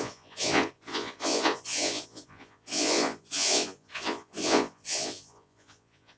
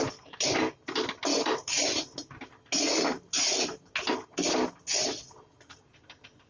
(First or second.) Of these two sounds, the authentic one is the second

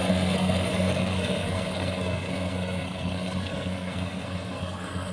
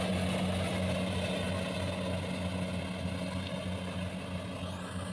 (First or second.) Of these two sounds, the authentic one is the second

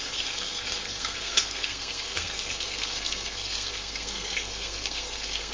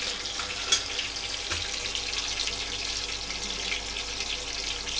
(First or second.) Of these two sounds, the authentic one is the second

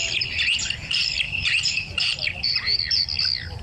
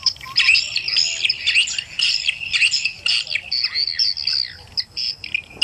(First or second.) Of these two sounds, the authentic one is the second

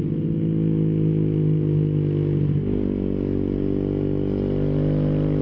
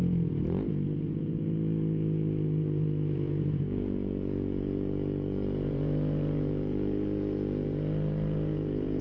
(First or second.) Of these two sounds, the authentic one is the first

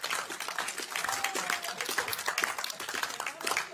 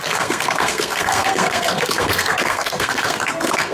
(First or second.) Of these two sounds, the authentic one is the first